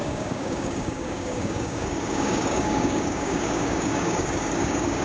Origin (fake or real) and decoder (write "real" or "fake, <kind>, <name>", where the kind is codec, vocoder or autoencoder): fake, codec, DAC